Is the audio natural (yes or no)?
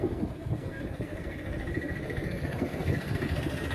no